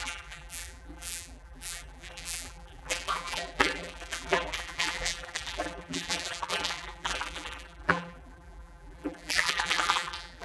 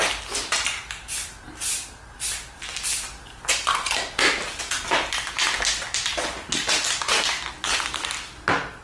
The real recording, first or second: second